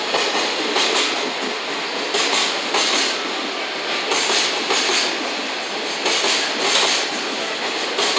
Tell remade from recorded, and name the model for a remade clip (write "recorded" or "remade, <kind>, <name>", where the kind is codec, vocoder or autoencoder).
recorded